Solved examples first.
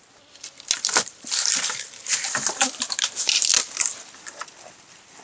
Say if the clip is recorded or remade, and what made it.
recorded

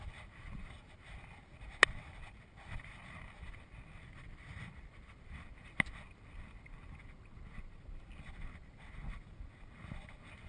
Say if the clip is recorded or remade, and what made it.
recorded